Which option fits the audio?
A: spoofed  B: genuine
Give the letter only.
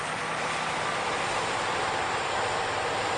B